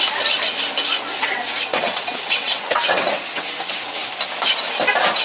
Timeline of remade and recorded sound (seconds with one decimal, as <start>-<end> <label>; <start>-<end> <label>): 0.0-0.9 recorded; 0.9-4.0 remade; 4.0-5.2 recorded